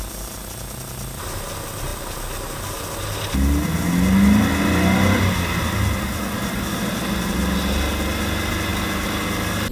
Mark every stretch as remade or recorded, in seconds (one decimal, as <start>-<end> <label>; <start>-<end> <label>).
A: 0.0-9.7 recorded